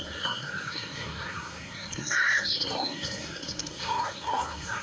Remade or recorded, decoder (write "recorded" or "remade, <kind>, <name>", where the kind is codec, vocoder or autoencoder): remade, codec, SNAC